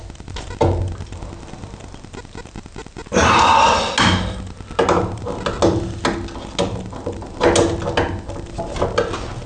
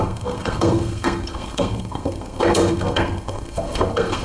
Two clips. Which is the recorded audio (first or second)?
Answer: first